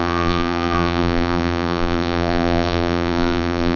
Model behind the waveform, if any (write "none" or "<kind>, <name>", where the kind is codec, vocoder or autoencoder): vocoder, BigVGAN v2